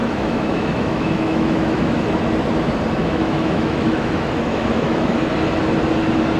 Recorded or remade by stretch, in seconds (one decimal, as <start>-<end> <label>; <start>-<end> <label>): 0.0-2.0 remade; 2.0-3.0 recorded; 3.0-5.1 remade; 5.1-6.4 recorded